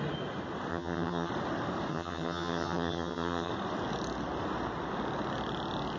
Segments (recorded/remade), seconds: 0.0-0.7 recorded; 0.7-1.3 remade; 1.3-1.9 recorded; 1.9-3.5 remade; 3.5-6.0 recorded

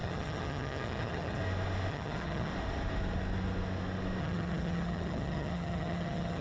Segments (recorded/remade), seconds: 0.0-1.4 remade; 1.4-1.9 recorded; 1.9-2.5 remade; 2.5-4.2 recorded; 4.2-6.4 remade

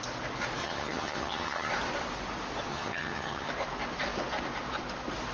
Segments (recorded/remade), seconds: 0.0-0.6 recorded; 0.6-1.7 remade; 1.7-2.7 recorded; 2.7-3.5 remade; 3.5-5.3 recorded

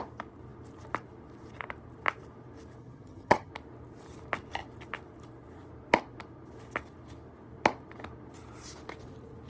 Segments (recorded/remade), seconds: 0.0-2.8 recorded; 2.8-3.5 remade; 3.5-9.5 recorded

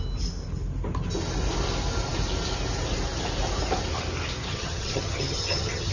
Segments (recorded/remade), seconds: 0.0-4.5 recorded; 4.5-5.9 remade

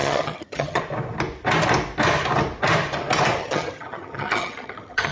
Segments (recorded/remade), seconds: 0.0-0.8 remade; 0.8-3.4 recorded; 3.4-5.1 remade

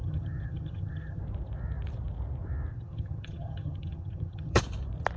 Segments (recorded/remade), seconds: 0.0-1.2 remade; 1.2-2.7 recorded; 2.7-4.6 remade; 4.6-5.2 recorded

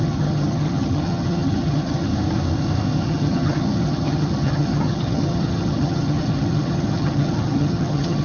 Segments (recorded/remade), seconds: 0.0-2.1 remade; 2.1-3.0 recorded; 3.0-8.2 remade